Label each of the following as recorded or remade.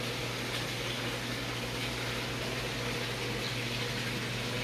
recorded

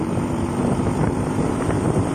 remade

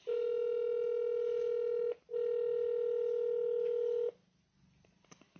recorded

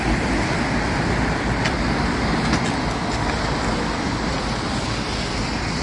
recorded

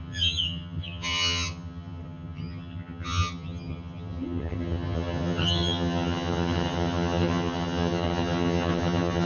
remade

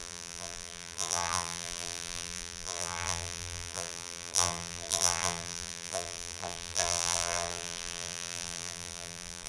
remade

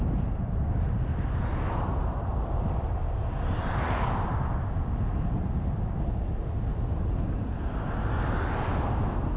recorded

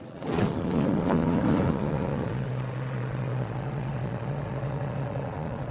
remade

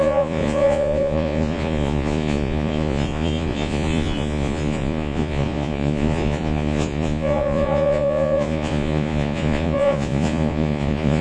remade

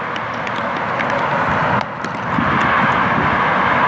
recorded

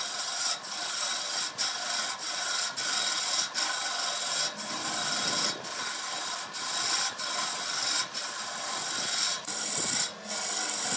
recorded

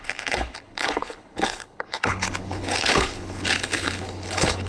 remade